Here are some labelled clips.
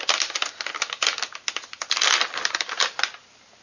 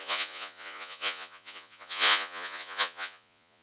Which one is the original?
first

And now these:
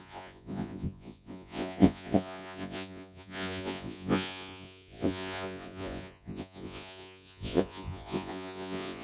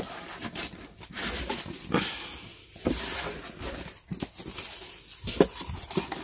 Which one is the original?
second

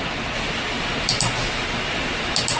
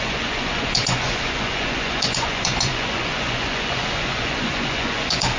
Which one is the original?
first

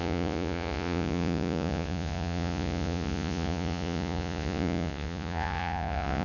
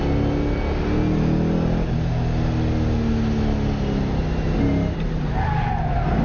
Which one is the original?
second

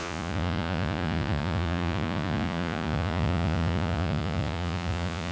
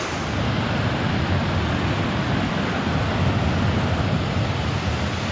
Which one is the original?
second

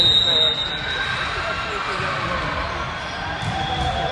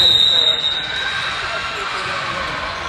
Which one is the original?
first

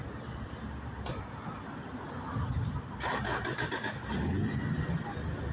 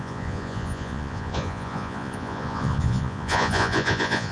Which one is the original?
first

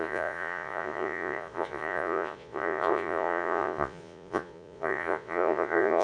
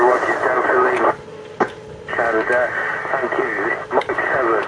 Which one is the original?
second